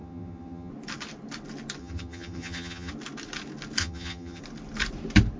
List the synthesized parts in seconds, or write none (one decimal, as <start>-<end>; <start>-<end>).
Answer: 0.0-0.7; 1.8-2.9; 3.8-4.4